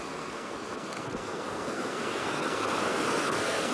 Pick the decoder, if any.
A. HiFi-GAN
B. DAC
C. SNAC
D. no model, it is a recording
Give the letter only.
C